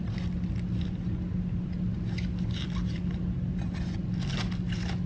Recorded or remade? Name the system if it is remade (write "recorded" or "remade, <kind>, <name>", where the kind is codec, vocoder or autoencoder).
recorded